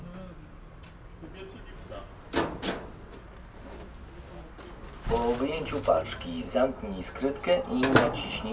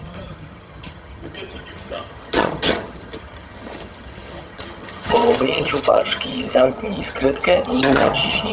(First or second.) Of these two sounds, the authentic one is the first